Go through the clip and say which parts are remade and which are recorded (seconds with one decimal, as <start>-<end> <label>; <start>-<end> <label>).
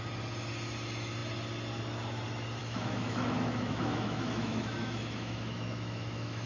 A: 0.0-2.6 recorded; 2.6-6.5 remade